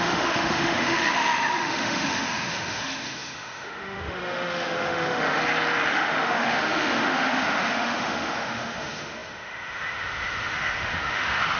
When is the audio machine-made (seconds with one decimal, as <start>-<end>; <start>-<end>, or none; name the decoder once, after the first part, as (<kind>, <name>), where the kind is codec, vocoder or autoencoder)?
0.0-5.4 (autoencoder, DAC-VAE); 5.9-11.6